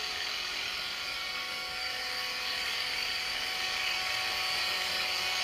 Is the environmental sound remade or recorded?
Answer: remade